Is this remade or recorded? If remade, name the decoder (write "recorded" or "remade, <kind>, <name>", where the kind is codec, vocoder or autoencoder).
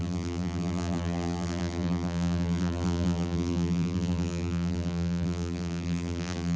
remade, vocoder, BigVGAN v2